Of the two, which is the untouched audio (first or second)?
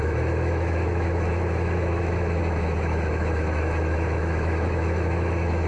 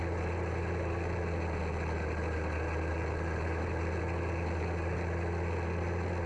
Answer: second